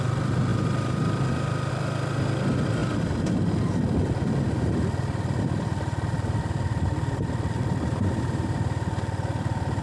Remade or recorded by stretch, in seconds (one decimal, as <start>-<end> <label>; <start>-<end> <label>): 0.0-9.8 recorded